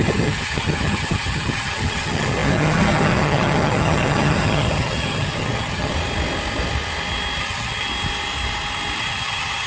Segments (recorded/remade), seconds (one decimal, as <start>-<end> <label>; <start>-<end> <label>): 0.0-5.9 remade; 5.9-7.4 recorded; 7.4-7.9 remade; 7.9-9.0 recorded; 9.0-9.7 remade